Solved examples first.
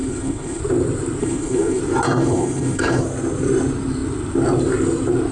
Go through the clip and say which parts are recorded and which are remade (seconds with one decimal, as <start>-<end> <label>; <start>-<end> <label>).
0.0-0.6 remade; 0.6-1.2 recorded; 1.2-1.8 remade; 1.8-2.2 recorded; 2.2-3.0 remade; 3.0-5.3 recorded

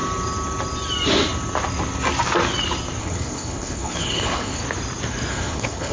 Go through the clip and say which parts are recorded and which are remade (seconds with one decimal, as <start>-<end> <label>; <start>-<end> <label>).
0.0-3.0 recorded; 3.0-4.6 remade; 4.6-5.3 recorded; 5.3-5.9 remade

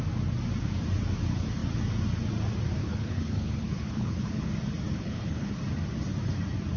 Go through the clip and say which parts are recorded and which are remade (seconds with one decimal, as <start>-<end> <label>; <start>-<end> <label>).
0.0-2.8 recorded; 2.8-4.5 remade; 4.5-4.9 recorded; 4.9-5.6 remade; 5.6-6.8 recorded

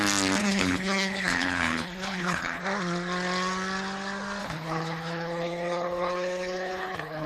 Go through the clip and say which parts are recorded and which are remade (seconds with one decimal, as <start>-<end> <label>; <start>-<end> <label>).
0.0-0.4 recorded; 0.4-2.6 remade; 2.6-4.4 recorded; 4.4-7.3 remade

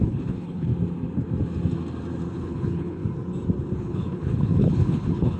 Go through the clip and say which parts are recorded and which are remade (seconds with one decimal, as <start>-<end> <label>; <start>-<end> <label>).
0.0-0.7 remade; 0.7-2.3 recorded; 2.3-3.0 remade; 3.0-3.8 recorded; 3.8-5.4 remade

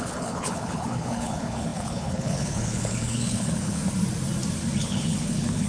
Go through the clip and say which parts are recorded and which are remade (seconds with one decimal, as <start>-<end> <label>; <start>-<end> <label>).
0.0-3.8 remade; 3.8-4.8 recorded; 4.8-5.7 remade